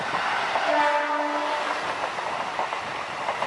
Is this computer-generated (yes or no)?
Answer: no